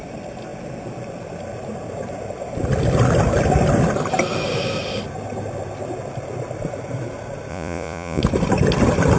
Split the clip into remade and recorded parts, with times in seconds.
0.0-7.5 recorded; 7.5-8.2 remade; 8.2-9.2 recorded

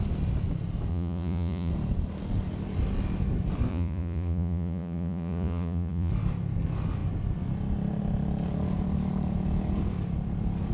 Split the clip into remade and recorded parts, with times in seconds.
0.0-0.9 recorded; 0.9-1.7 remade; 1.7-3.7 recorded; 3.7-6.1 remade; 6.1-10.7 recorded

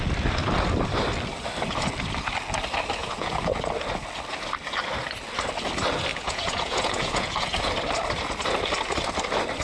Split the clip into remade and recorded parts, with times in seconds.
0.0-3.0 recorded; 3.0-3.5 remade; 3.5-6.1 recorded; 6.1-7.7 remade; 7.7-9.6 recorded

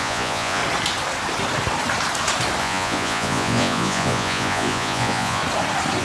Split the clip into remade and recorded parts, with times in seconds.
0.0-0.6 remade; 0.6-2.6 recorded; 2.6-5.4 remade; 5.4-6.0 recorded